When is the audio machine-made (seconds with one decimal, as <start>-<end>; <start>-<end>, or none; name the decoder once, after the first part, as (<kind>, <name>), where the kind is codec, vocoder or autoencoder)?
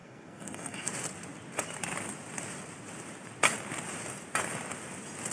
0.0-0.9 (codec, SNAC)